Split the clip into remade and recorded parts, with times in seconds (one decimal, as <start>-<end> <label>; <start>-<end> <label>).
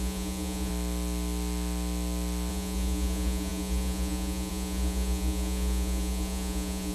0.0-0.7 remade; 0.7-2.5 recorded; 2.5-6.9 remade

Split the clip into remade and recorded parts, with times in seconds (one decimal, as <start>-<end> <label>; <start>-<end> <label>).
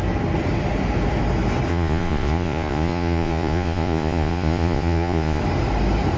0.0-1.7 recorded; 1.7-5.4 remade; 5.4-6.2 recorded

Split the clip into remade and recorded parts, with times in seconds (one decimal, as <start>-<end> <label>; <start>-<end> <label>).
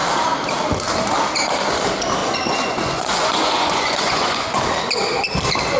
0.0-2.2 recorded; 2.2-4.6 remade; 4.6-5.8 recorded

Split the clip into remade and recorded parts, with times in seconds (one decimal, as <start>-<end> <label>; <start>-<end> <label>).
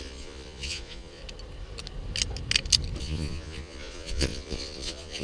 0.0-1.2 remade; 1.2-3.0 recorded; 3.0-5.2 remade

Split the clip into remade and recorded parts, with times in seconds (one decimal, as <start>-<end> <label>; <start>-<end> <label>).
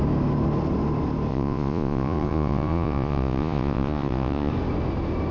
0.0-1.3 recorded; 1.3-4.5 remade; 4.5-5.3 recorded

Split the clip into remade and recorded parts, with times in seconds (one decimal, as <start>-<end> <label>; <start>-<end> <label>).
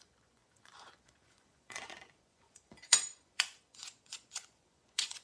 0.0-5.2 remade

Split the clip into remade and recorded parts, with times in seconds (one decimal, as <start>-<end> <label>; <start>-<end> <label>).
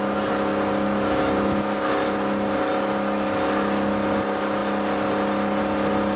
0.0-6.2 recorded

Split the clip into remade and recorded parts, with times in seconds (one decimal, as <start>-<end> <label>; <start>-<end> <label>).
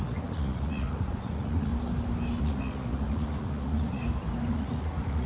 0.0-1.7 remade; 1.7-2.4 recorded; 2.4-4.0 remade; 4.0-4.5 recorded; 4.5-5.3 remade